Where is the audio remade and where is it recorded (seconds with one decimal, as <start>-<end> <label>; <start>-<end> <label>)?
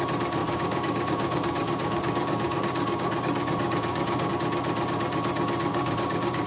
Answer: 0.0-0.4 recorded; 0.4-4.3 remade; 4.3-5.7 recorded; 5.7-6.5 remade